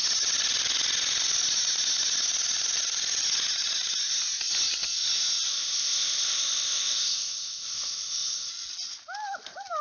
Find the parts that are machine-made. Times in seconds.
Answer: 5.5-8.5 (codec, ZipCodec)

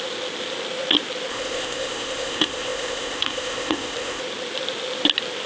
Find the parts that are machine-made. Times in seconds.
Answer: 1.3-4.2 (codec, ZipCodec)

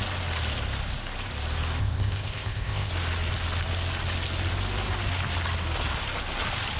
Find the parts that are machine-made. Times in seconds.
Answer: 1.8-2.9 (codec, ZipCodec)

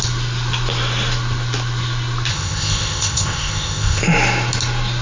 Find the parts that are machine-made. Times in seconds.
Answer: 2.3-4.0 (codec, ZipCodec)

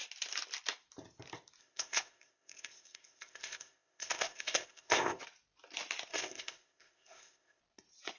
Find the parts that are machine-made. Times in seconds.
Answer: 1.6-5.2 (codec, ZipCodec); 6.1-7.6